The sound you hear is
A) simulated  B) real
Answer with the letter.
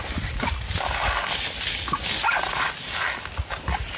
B